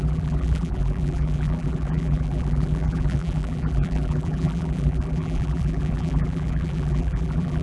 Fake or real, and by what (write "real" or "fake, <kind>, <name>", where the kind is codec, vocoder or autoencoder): fake, vocoder, BigVGAN v2